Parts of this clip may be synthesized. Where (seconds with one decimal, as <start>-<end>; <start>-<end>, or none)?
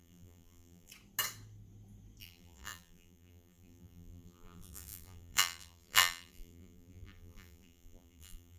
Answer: 0.0-0.9; 2.2-8.6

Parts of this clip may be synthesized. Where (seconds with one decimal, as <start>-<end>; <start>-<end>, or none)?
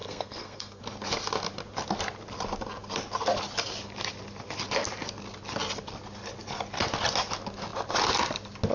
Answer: 0.0-0.8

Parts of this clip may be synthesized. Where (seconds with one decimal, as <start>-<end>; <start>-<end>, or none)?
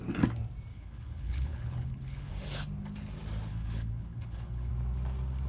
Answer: 0.7-2.3; 3.5-4.7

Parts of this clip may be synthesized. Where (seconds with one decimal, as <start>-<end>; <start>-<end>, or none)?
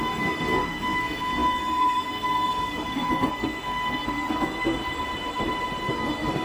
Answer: 0.0-4.8; 5.9-6.4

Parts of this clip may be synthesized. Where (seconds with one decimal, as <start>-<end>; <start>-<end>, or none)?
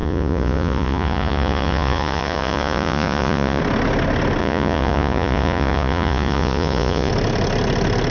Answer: 0.0-3.6; 4.4-7.1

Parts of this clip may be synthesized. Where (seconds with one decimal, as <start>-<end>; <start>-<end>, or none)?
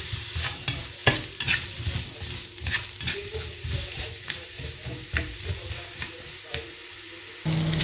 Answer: 0.0-1.0; 3.9-6.8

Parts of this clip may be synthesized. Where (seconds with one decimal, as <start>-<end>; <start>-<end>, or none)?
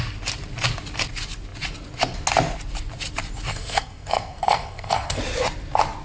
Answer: 3.5-5.2